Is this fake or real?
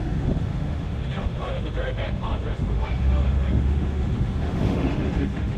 fake